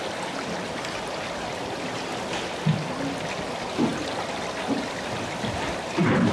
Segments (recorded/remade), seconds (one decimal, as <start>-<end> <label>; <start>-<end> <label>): 0.0-6.3 recorded